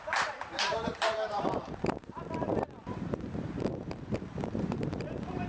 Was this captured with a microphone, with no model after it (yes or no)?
no